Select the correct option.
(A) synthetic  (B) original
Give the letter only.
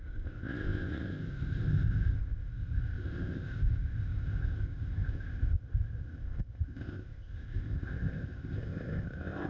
A